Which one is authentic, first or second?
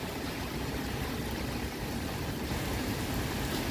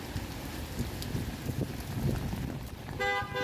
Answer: second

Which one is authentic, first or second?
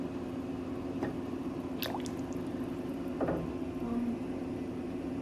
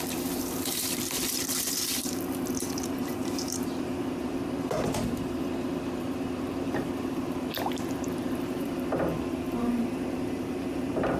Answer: first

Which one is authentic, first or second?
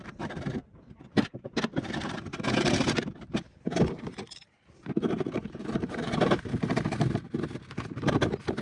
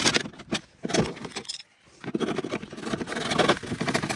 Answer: second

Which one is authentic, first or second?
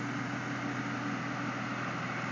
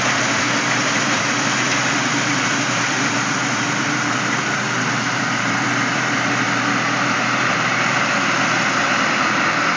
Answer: first